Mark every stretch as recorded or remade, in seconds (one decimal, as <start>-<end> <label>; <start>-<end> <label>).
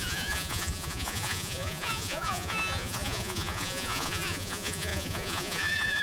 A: 0.0-6.0 remade